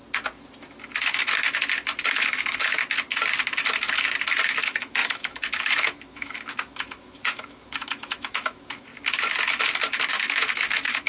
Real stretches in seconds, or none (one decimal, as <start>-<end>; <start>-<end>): 0.0-2.1; 2.8-4.6; 8.9-10.1